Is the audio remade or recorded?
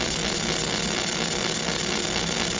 recorded